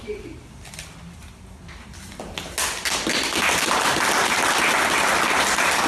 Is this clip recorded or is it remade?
recorded